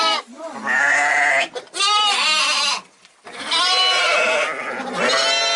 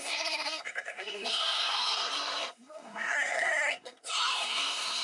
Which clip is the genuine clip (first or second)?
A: first